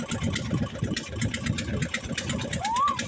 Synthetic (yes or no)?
no